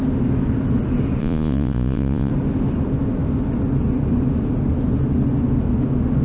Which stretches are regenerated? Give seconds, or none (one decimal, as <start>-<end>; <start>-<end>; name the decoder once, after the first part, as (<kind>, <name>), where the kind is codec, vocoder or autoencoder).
1.2-2.3 (vocoder, Vocos)